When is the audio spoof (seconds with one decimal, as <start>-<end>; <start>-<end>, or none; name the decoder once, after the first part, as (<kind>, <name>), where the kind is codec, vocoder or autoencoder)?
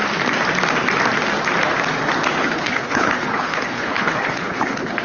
2.4-5.0 (codec, HILCodec)